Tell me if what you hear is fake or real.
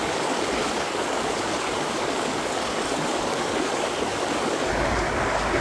fake